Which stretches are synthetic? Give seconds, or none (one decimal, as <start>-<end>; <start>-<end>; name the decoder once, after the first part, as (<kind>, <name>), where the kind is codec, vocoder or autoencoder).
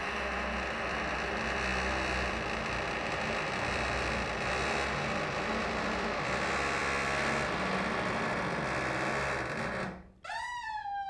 none